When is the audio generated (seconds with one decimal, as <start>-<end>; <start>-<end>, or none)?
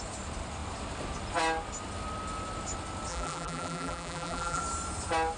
3.1-4.6